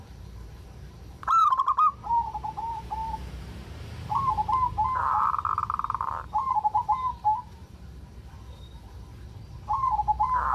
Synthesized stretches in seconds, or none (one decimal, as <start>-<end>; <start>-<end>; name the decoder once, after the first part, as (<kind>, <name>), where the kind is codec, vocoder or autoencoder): 0.0-5.6 (vocoder, BigVGAN v2); 6.4-10.5